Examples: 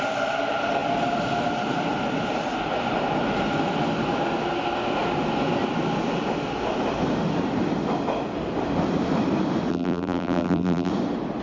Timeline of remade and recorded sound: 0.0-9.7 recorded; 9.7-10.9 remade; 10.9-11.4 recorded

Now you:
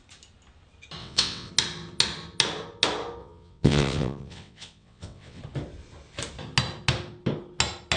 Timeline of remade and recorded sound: 0.0-1.0 recorded; 1.0-1.5 remade; 1.5-3.2 recorded; 3.2-5.4 remade; 5.4-8.0 recorded

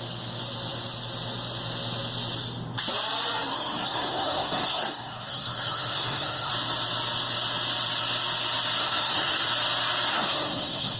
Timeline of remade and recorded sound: 0.0-3.5 recorded; 3.5-6.5 remade; 6.5-8.8 recorded; 8.8-9.5 remade; 9.5-10.1 recorded; 10.1-11.0 remade